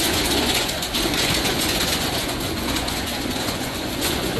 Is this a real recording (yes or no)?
no